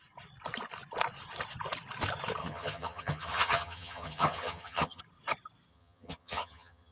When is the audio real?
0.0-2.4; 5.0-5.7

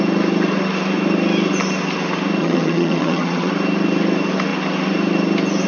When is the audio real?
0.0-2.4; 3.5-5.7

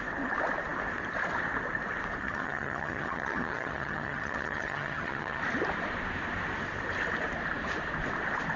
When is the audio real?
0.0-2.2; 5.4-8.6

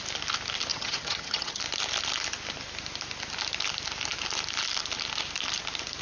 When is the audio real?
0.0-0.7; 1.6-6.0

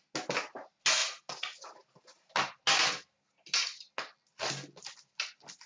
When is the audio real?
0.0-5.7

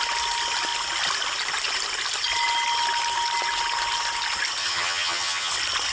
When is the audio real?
0.0-4.6; 5.5-5.9